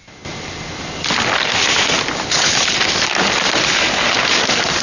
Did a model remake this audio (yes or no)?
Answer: no